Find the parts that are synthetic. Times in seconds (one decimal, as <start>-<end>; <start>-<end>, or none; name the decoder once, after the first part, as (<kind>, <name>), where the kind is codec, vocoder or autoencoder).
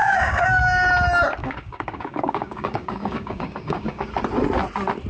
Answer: 0.0-0.9 (codec, DAC); 1.4-4.1